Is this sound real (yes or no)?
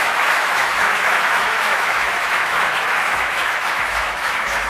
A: no